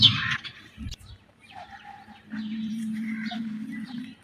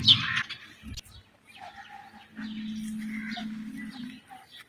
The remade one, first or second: first